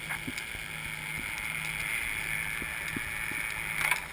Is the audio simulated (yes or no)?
no